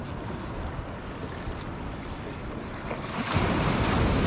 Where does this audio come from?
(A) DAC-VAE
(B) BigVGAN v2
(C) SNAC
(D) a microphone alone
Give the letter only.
D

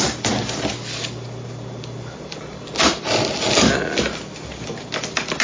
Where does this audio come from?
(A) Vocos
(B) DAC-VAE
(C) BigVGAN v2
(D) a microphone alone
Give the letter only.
D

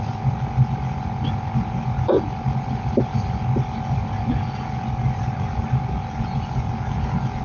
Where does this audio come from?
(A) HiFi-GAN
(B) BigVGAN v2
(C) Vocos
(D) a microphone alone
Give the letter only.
D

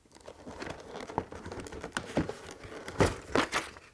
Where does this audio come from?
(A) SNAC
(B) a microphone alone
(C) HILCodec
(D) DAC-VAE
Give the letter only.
B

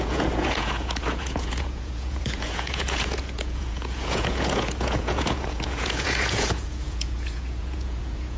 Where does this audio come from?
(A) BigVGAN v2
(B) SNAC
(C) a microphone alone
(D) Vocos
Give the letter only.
D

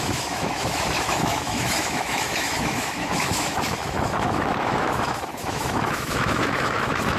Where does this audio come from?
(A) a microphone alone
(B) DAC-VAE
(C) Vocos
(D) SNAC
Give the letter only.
B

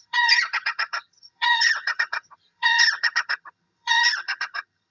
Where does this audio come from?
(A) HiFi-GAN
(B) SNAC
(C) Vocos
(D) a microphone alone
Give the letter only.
A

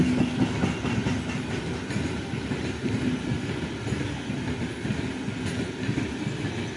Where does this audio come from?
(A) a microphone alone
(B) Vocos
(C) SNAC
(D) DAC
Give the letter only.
A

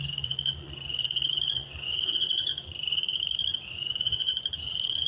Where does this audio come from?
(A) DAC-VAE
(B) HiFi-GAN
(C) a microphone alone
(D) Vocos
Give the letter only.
D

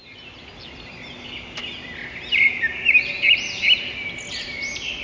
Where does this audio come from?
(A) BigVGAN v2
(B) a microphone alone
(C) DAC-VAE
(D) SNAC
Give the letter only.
B